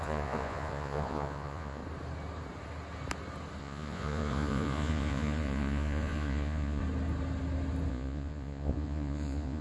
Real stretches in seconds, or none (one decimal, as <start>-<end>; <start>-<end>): 1.8-3.6; 6.8-7.9